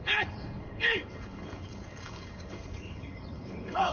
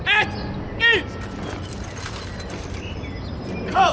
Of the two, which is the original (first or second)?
second